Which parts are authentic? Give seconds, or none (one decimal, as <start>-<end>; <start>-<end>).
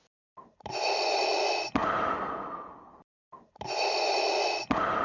0.0-5.0